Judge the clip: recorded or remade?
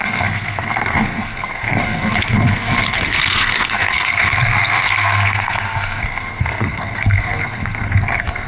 remade